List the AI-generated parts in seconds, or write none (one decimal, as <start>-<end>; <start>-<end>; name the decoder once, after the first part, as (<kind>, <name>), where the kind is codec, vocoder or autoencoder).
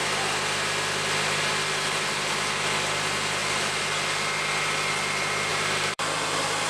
3.4-3.9 (vocoder, BigVGAN v2); 5.5-6.7